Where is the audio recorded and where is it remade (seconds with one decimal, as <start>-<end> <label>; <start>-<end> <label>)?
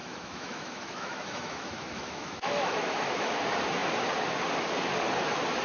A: 0.0-3.4 remade; 3.4-5.6 recorded